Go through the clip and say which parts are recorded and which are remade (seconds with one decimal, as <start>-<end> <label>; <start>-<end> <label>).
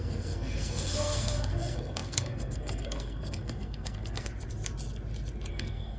0.0-4.3 remade; 4.3-5.5 recorded; 5.5-6.0 remade